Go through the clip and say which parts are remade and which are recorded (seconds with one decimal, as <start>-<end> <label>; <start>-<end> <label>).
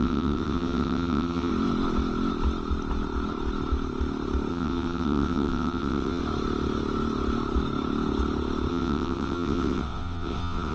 0.0-1.5 remade; 1.5-4.5 recorded; 4.5-6.2 remade; 6.2-8.7 recorded; 8.7-10.7 remade